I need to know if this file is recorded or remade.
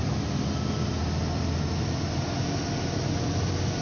recorded